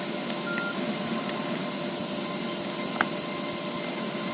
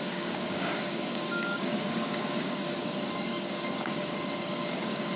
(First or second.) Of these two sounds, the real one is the first